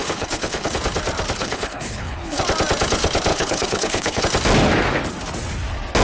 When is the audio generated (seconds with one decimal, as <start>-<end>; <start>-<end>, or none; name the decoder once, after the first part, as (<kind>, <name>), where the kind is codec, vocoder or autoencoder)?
0.0-0.7 (codec, HILCodec); 1.4-2.4; 3.3-4.2